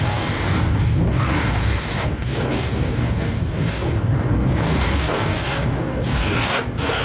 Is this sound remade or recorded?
remade